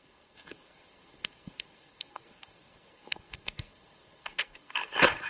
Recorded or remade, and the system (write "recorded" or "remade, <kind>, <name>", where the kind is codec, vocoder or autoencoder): remade, codec, SNAC